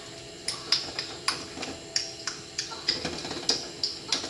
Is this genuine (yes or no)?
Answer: yes